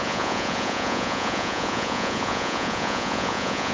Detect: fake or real fake